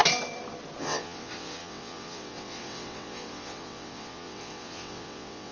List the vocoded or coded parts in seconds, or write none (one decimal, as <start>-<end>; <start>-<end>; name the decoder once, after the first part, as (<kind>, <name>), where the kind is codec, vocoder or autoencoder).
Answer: 0.8-5.5 (vocoder, WaveNeXt)